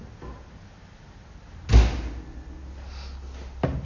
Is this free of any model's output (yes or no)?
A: yes